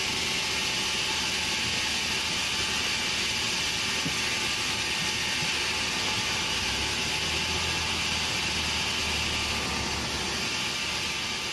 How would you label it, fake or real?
real